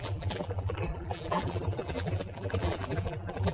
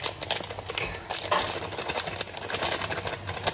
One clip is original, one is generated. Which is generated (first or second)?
first